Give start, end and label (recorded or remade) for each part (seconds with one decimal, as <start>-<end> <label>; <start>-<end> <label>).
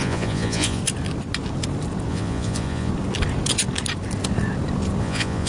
0.0-0.8 remade; 0.8-2.1 recorded; 2.1-2.9 remade; 2.9-5.0 recorded; 5.0-5.5 remade